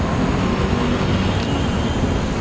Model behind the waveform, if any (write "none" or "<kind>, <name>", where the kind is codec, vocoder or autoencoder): none